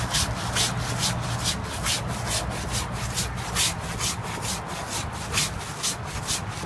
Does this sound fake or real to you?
real